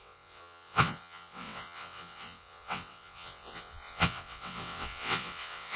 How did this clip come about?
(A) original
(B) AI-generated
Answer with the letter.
B